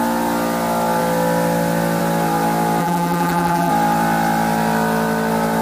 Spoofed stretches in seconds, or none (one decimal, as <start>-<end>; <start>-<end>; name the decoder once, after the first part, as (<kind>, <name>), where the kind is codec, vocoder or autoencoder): 2.8-3.7 (vocoder, BigVGAN v2)